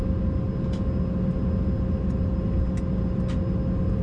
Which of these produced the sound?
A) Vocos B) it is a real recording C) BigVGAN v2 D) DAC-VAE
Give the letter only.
B